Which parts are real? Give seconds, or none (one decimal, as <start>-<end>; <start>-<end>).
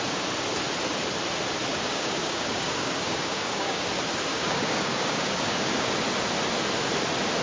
0.0-1.7; 3.9-4.3; 5.9-7.4